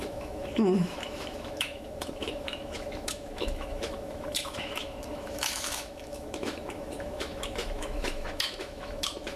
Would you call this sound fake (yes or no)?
yes